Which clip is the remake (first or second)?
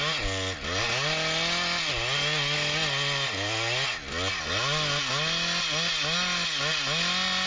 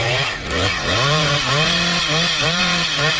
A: second